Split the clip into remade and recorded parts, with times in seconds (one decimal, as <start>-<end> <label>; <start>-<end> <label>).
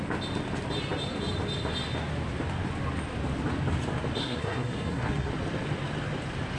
0.0-4.2 recorded; 4.2-5.3 remade; 5.3-6.6 recorded